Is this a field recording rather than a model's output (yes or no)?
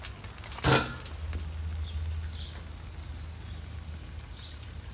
yes